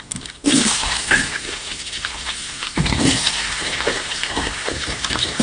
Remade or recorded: remade